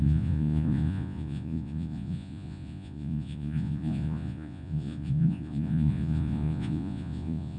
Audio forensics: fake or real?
fake